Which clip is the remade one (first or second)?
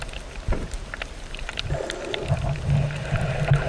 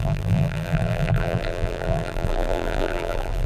second